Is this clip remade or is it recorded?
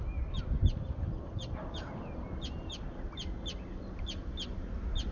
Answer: recorded